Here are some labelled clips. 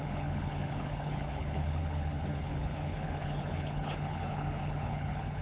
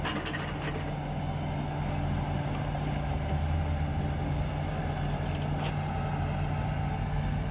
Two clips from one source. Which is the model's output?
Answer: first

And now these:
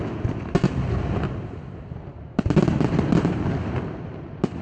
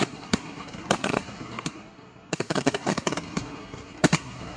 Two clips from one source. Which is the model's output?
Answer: second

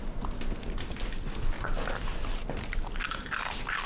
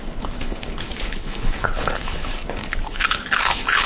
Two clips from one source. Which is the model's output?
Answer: second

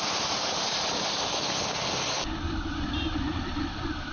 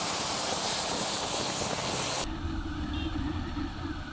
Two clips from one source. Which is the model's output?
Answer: first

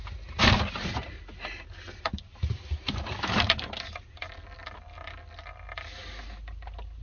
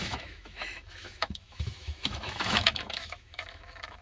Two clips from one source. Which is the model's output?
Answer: second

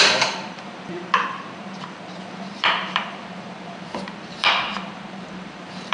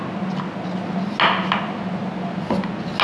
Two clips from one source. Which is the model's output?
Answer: first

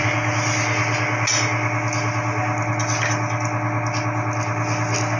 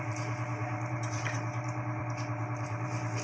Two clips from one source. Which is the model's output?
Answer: second